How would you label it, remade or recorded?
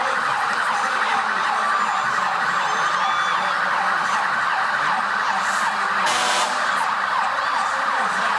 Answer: recorded